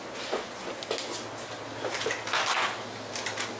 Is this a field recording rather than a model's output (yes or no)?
yes